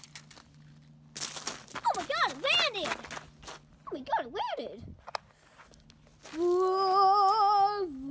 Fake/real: real